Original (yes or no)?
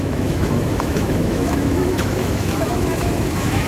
no